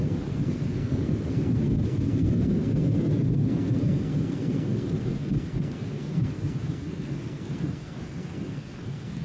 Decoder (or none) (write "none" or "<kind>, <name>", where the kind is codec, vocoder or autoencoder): codec, SNAC